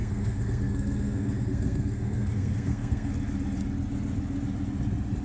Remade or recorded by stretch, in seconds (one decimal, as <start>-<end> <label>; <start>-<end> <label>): 0.0-3.1 remade; 3.1-5.2 recorded